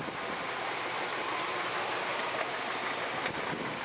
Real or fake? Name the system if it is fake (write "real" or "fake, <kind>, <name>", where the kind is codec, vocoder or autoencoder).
real